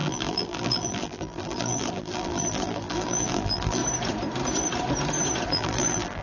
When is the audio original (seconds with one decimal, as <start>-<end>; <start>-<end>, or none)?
3.8-5.5